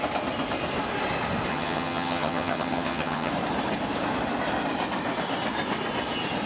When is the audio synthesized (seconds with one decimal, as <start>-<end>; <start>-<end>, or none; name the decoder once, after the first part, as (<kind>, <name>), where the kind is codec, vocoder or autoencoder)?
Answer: 1.5-3.3 (vocoder, HiFi-GAN)